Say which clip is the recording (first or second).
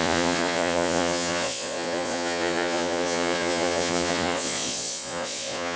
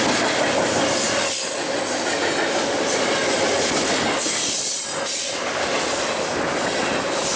second